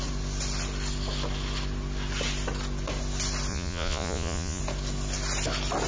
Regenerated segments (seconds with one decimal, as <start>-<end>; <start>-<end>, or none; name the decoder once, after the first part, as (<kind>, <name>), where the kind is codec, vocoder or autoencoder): 3.5-4.6 (vocoder, Vocos)